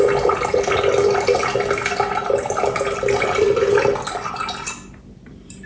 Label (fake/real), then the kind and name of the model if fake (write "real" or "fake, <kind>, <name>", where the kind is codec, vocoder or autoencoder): real